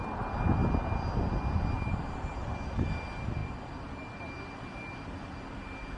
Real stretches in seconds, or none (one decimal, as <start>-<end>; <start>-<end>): 0.0-6.0